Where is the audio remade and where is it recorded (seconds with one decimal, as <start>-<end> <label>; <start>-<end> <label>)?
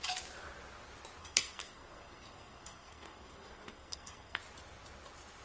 0.0-1.2 recorded; 1.2-4.4 remade; 4.4-5.4 recorded